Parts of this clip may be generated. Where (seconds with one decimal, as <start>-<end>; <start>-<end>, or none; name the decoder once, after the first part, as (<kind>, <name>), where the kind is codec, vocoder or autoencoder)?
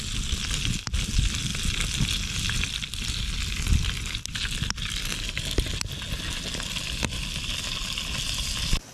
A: none